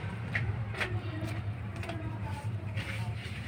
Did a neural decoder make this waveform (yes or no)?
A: yes